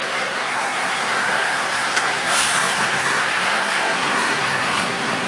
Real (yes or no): no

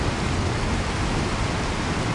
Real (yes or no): yes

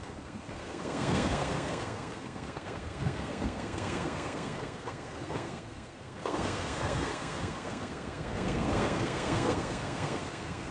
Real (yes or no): no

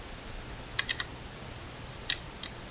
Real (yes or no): yes